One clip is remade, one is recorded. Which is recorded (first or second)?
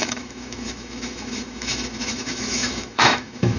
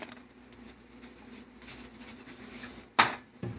second